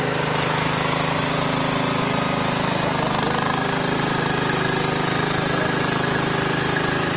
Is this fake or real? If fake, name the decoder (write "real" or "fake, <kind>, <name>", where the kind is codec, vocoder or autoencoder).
real